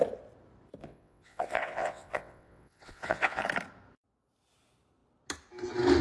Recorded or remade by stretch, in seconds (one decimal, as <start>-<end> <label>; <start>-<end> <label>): 0.0-0.8 recorded; 0.8-3.4 remade; 3.4-6.0 recorded